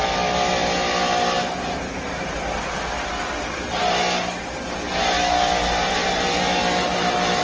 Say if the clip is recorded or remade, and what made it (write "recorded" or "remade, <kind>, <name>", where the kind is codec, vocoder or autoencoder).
recorded